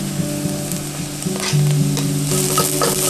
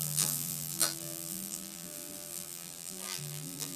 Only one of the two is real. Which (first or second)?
first